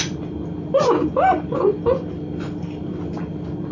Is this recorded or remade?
recorded